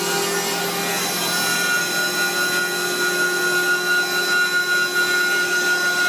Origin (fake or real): real